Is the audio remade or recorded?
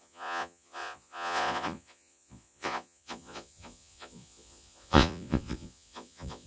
remade